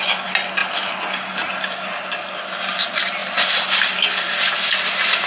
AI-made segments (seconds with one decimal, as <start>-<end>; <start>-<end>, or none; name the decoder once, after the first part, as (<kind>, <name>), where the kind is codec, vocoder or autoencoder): 3.2-4.5 (vocoder, BigVGAN v2)